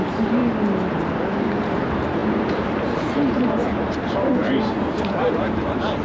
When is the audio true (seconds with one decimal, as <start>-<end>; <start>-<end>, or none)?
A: 0.4-1.5